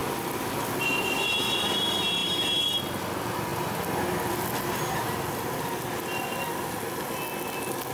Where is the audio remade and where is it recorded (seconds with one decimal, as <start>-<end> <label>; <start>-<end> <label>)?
0.0-7.9 recorded